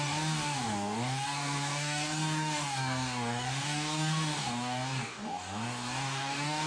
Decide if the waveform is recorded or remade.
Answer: remade